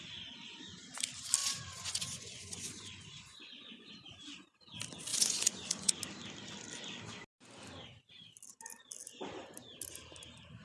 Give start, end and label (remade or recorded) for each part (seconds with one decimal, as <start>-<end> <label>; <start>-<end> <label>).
0.0-1.4 recorded; 1.4-3.9 remade; 3.9-5.1 recorded; 5.1-5.9 remade; 5.9-10.6 recorded